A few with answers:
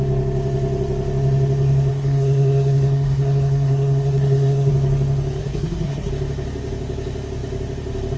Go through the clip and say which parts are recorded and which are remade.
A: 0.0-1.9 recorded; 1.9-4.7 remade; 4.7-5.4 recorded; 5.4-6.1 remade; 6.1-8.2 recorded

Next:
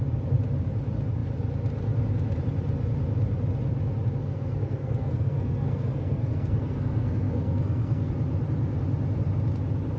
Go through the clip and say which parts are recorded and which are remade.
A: 0.0-4.2 recorded; 4.2-8.1 remade; 8.1-10.0 recorded